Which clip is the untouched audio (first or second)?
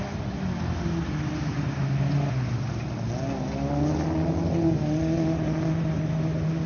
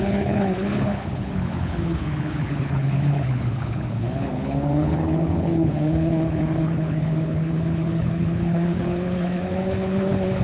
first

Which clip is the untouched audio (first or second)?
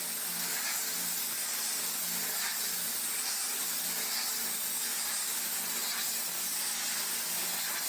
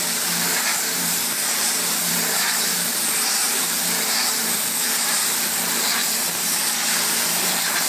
first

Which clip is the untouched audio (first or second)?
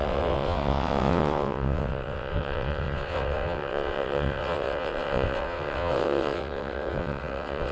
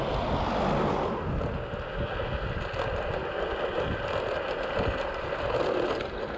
second